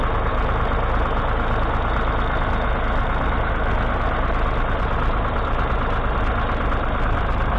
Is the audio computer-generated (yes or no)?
no